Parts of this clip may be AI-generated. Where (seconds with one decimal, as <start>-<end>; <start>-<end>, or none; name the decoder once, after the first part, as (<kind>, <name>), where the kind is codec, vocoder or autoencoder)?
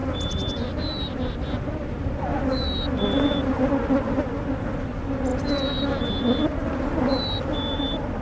none